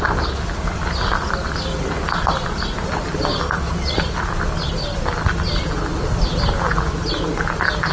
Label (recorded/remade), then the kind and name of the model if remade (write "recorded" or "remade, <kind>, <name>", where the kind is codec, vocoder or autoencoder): recorded